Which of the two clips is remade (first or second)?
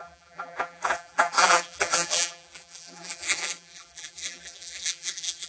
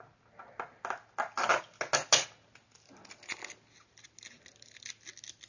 first